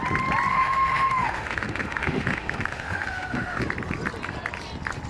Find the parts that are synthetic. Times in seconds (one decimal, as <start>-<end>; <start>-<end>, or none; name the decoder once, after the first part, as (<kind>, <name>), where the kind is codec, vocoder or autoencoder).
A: 0.5-3.6 (autoencoder, DAC-VAE)